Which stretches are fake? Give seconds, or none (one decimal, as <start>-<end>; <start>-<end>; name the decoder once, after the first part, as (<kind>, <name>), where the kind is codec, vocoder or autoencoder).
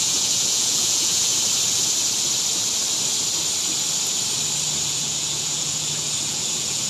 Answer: 0.0-1.3 (vocoder, Vocos); 4.9-6.9